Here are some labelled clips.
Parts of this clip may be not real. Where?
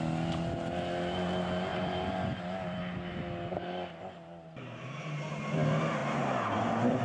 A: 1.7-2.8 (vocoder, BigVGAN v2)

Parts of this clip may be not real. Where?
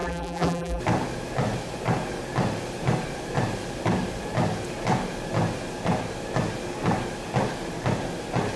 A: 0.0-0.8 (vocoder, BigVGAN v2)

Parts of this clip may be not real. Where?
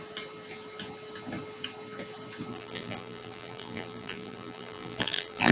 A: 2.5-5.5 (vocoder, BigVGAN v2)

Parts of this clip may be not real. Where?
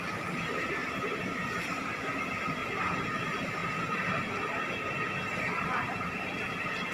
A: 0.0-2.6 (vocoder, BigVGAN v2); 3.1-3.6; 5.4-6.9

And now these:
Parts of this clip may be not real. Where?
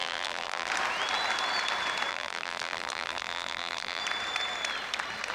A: 0.0-0.7 (vocoder, BigVGAN v2); 2.1-4.0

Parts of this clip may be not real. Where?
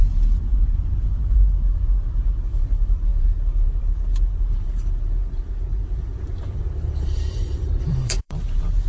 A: 1.2-1.8 (vocoder, BigVGAN v2); 2.4-8.9